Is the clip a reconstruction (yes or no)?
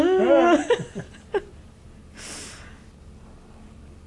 no